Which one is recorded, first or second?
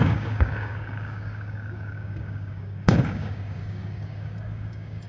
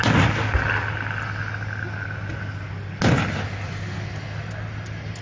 second